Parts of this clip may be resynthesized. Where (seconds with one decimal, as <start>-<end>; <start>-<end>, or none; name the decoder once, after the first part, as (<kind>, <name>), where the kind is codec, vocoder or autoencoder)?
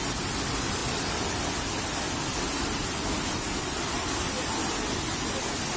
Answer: 0.8-4.3 (vocoder, BigVGAN v2)